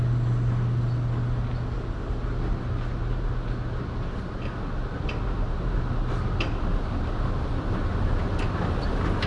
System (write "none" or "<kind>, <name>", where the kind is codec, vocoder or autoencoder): none